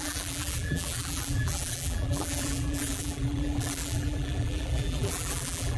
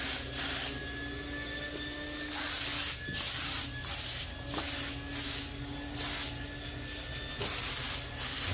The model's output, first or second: first